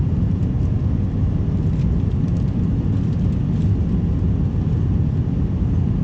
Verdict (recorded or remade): recorded